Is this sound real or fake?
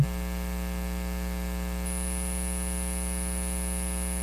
real